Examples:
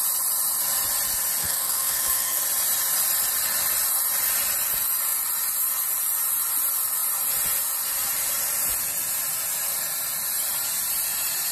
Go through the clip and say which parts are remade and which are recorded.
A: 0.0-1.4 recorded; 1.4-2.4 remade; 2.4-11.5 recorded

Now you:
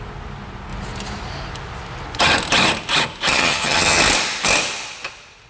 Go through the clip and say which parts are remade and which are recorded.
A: 0.0-3.3 recorded; 3.3-4.0 remade; 4.0-5.5 recorded

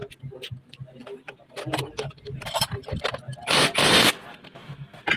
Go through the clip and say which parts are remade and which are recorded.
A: 0.0-0.5 recorded; 0.5-5.2 remade

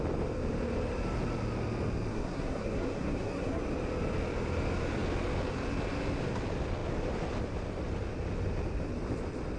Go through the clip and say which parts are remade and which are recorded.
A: 0.0-2.1 recorded; 2.1-3.6 remade; 3.6-9.6 recorded